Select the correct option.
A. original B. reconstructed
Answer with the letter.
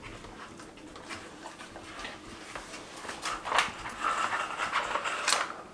A